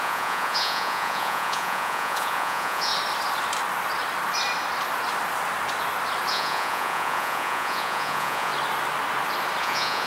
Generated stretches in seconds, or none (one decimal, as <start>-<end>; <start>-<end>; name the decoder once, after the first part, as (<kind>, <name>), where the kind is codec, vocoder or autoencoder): 0.0-2.9 (vocoder, Vocos); 6.3-8.5; 9.6-10.1